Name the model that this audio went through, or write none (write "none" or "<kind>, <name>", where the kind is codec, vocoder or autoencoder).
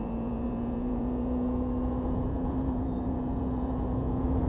vocoder, Vocos